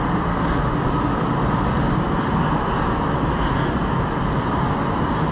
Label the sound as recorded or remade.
recorded